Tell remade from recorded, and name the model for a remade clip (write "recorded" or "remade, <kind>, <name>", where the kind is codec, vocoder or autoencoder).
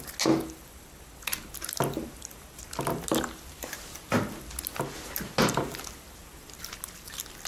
recorded